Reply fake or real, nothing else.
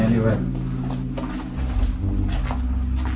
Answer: real